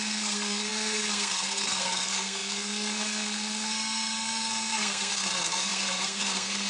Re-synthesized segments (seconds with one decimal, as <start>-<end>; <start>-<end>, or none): 0.0-6.7